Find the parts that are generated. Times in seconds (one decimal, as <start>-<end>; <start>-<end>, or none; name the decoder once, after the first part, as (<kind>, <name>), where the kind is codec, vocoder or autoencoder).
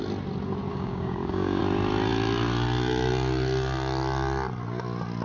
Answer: 0.7-1.6 (codec, DAC)